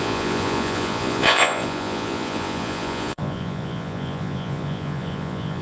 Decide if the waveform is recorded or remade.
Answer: remade